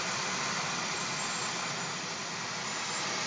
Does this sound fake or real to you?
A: real